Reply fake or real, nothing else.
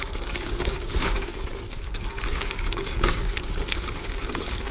fake